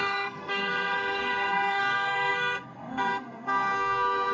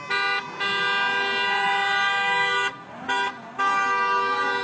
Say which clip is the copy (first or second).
first